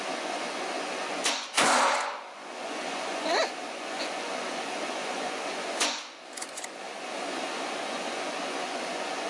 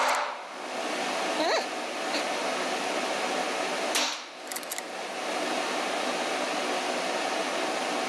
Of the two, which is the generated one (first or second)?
first